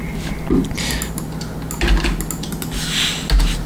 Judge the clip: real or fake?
real